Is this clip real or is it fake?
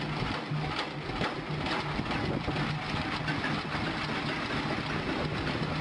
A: real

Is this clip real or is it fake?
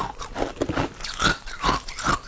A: real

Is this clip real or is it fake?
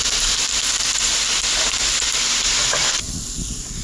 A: real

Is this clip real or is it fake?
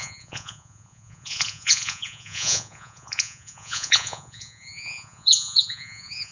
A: fake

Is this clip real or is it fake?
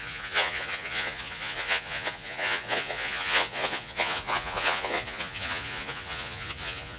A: fake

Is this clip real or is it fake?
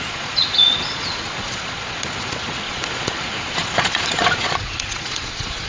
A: fake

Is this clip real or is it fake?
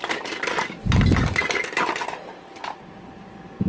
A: real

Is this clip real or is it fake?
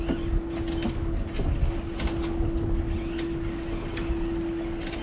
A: real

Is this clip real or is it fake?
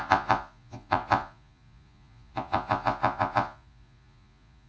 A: fake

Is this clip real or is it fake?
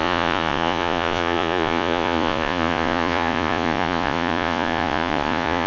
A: fake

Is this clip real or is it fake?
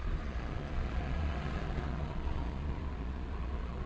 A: fake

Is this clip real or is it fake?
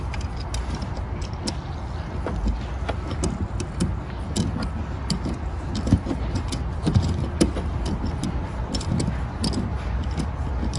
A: real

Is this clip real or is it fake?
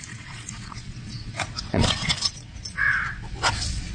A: fake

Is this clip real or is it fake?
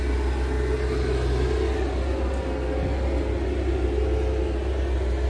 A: real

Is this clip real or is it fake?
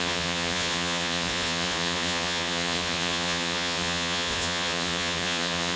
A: fake